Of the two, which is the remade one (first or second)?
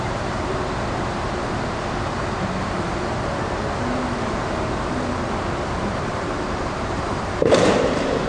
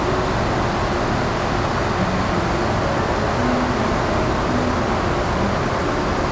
first